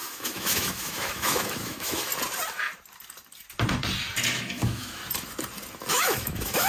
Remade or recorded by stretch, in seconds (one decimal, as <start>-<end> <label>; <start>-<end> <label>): 0.0-2.1 remade; 2.1-4.3 recorded; 4.3-5.0 remade; 5.0-5.9 recorded; 5.9-6.7 remade